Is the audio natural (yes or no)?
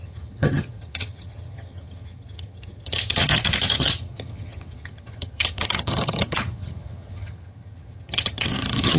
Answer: no